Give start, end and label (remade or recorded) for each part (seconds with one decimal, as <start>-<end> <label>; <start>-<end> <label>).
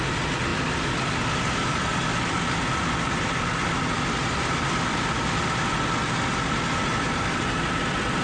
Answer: 0.0-8.2 recorded